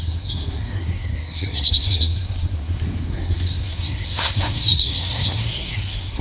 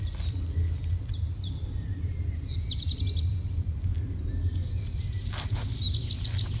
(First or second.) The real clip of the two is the second